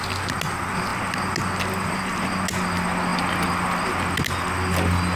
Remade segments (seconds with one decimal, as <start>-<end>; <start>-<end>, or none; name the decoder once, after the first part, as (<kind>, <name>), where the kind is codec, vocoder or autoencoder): none